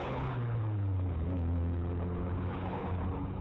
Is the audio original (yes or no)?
no